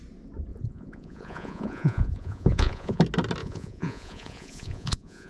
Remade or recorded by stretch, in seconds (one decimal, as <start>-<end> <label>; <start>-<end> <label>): 0.0-0.5 recorded; 0.5-3.0 remade; 3.0-3.4 recorded; 3.4-5.3 remade